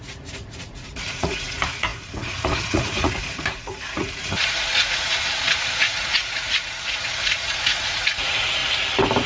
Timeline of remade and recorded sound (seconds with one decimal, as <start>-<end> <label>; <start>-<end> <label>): 0.0-8.6 remade; 8.6-9.3 recorded

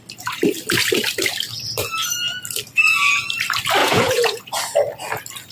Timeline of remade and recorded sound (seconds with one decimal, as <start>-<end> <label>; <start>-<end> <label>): 0.0-3.8 recorded; 3.8-4.4 remade; 4.4-5.5 recorded